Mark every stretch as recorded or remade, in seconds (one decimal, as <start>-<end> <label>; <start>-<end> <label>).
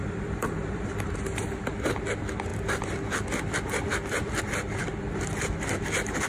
0.0-1.9 remade; 1.9-6.3 recorded